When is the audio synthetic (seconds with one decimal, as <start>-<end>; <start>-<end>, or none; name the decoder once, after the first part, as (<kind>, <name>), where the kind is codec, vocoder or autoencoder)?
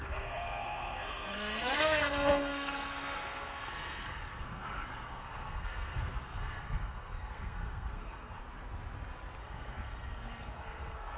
0.0-8.4 (codec, SNAC); 9.4-11.2